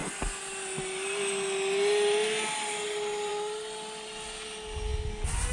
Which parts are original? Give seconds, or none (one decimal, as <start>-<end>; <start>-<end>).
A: 0.0-5.5